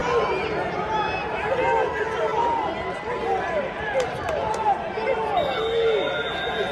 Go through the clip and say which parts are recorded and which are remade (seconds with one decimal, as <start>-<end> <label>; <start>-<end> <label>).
0.0-2.3 recorded; 2.3-5.6 remade; 5.6-6.7 recorded